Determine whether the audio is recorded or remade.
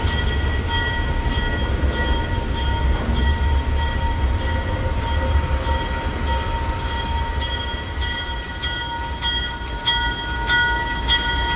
recorded